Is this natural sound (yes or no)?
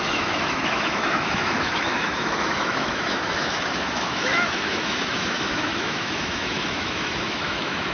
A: no